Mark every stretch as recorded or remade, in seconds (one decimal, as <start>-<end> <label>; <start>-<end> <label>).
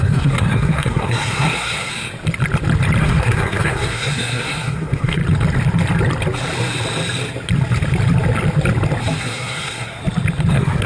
0.0-1.9 remade; 1.9-3.0 recorded; 3.0-5.2 remade; 5.2-9.2 recorded; 9.2-10.0 remade; 10.0-10.5 recorded; 10.5-10.9 remade